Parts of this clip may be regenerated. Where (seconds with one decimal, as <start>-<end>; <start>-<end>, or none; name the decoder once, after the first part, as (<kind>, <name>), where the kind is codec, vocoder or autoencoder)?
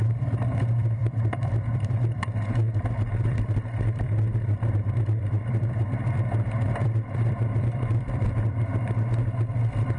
0.0-8.7 (vocoder, BigVGAN v2); 9.5-10.0